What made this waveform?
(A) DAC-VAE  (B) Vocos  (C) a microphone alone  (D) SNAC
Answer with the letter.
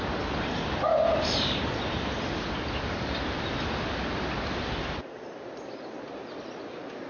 C